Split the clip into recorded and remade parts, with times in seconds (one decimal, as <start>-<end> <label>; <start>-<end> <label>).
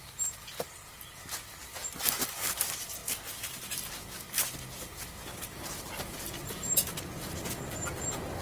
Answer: 0.0-3.0 remade; 3.0-4.8 recorded; 4.8-8.4 remade